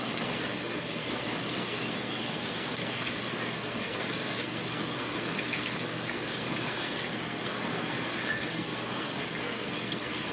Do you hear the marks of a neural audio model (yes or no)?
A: yes